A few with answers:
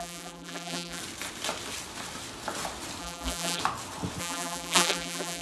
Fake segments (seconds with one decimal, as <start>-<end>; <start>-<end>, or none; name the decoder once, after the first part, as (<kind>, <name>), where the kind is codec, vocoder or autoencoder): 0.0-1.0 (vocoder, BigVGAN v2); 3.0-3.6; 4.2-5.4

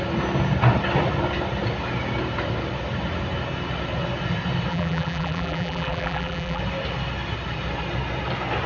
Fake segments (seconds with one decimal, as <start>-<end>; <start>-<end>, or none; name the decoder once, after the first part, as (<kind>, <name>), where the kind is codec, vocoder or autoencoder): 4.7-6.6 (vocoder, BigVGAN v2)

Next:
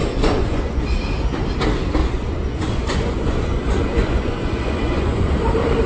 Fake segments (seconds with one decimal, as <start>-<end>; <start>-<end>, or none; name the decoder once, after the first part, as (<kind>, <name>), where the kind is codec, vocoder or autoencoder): 0.0-0.8 (vocoder, Vocos); 2.0-5.3